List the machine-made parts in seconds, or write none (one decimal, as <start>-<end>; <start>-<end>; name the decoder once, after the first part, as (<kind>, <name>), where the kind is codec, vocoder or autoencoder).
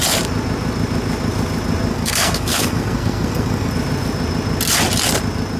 1.9-3.7 (codec, SNAC)